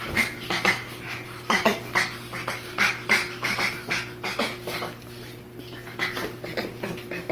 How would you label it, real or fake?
fake